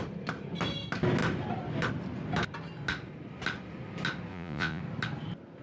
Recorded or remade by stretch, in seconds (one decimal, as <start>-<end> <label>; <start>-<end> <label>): 0.0-4.3 recorded; 4.3-4.8 remade; 4.8-5.6 recorded